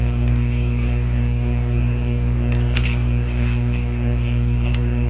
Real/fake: fake